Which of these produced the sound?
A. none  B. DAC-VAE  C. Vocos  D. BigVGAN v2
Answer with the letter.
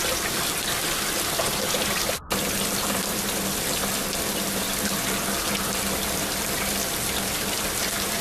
A